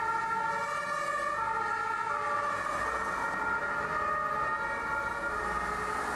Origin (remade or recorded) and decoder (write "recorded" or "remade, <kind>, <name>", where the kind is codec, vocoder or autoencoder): recorded